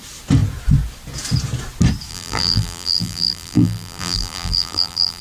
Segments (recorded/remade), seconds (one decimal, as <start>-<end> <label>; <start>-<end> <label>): 0.0-2.1 recorded; 2.1-5.2 remade